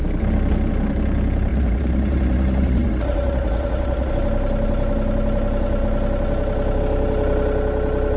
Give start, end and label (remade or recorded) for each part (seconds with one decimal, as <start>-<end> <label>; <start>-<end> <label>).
0.0-1.5 recorded; 1.5-4.1 remade; 4.1-8.2 recorded